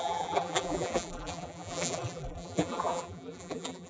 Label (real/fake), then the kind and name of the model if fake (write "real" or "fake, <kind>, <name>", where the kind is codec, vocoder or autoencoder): fake, vocoder, BigVGAN v2